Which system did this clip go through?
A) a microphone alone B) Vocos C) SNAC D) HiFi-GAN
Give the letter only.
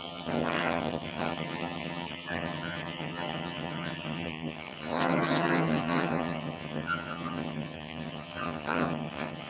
D